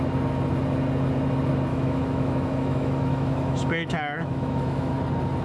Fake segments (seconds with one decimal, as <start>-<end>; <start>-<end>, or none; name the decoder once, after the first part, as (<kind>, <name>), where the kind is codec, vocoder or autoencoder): 1.7-4.9 (autoencoder, DAC-VAE)